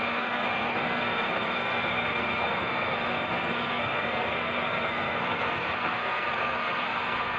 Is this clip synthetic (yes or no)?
yes